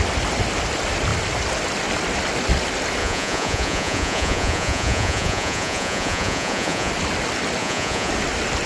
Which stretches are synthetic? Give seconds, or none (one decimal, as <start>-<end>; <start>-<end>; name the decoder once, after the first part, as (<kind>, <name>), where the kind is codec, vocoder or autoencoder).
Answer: 3.0-6.9 (vocoder, Vocos); 7.6-8.1